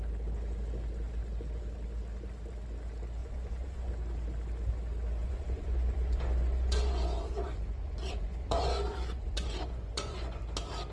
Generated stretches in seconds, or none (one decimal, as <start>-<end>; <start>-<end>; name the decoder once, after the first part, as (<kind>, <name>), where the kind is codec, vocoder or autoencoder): 3.2-3.9 (vocoder, Vocos); 5.2-10.4